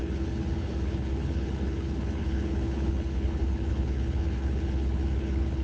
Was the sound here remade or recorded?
remade